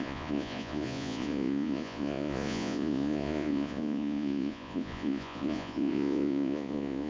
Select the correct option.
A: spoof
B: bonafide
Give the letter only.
A